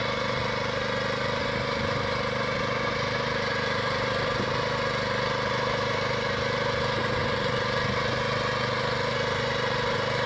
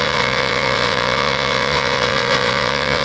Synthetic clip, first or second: second